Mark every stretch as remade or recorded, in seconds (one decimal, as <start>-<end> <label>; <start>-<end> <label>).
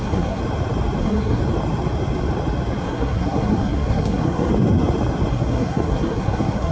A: 0.0-0.4 remade; 0.4-1.0 recorded; 1.0-1.4 remade; 1.4-2.8 recorded; 2.8-4.5 remade; 4.5-5.3 recorded; 5.3-6.7 remade